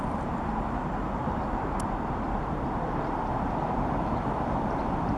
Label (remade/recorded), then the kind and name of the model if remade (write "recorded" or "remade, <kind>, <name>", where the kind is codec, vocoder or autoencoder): remade, vocoder, BigVGAN v2